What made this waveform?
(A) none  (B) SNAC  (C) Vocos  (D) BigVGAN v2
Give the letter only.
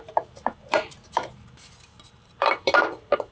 D